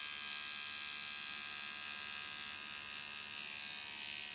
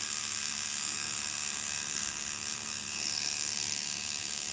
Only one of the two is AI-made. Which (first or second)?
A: second